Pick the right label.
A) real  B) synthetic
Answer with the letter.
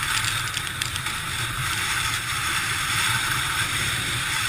B